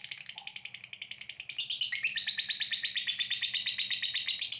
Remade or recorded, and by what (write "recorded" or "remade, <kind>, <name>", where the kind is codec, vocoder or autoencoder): recorded